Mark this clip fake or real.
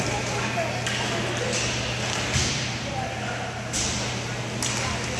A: real